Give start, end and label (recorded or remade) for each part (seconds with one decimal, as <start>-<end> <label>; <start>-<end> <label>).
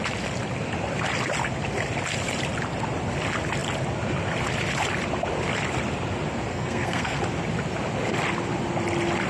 0.0-6.5 recorded; 6.5-7.2 remade; 7.2-9.3 recorded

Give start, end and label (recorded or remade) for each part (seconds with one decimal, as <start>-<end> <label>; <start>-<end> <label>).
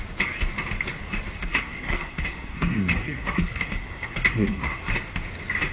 0.0-1.4 recorded; 1.4-4.8 remade; 4.8-5.7 recorded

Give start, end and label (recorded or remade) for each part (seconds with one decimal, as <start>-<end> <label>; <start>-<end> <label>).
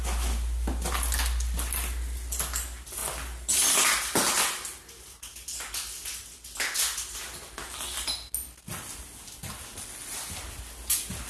0.0-11.3 recorded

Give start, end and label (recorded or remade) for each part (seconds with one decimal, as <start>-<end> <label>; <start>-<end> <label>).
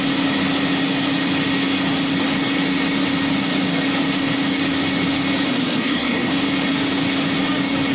0.0-5.5 recorded; 5.5-6.3 remade; 6.3-7.9 recorded